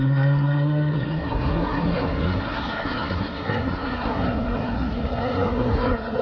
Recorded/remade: remade